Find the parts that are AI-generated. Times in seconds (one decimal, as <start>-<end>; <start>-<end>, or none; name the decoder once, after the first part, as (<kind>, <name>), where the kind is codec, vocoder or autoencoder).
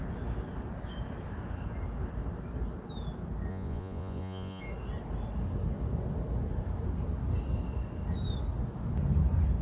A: 3.5-4.6 (vocoder, Vocos)